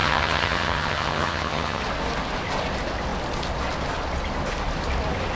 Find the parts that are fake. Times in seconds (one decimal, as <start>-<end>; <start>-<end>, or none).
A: 0.0-1.8